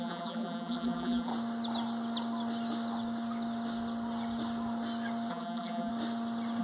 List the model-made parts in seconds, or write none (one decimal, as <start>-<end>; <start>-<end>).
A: 0.0-1.3; 5.3-5.9